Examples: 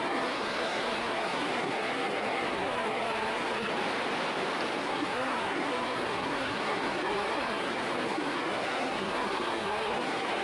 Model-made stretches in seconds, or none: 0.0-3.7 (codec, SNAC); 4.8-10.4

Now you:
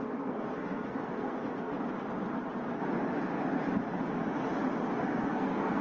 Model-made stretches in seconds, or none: 0.0-1.7 (codec, SNAC); 5.0-5.8

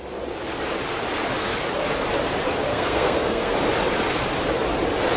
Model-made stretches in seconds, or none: 2.7-3.5 (codec, SNAC)

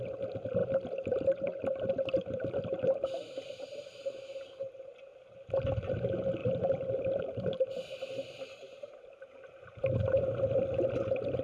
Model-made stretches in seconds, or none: none

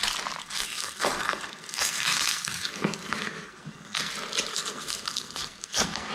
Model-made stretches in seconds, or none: 0.4-4.1 (codec, SNAC); 4.5-6.1

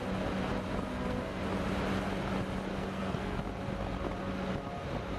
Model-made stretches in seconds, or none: 0.9-1.4 (codec, SNAC); 2.7-3.4

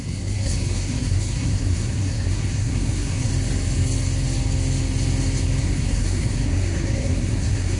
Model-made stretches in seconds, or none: 0.0-3.3 (codec, SNAC); 5.6-7.8